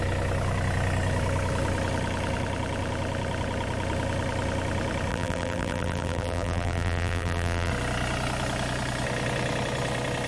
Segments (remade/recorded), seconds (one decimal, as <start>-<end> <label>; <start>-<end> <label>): 0.0-5.1 recorded; 5.1-7.7 remade; 7.7-10.3 recorded